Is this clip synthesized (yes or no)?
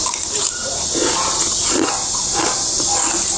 no